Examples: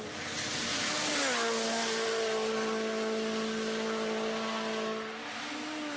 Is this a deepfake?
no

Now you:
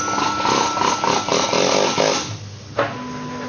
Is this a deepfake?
no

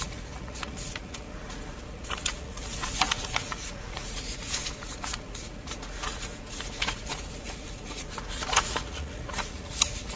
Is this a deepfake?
yes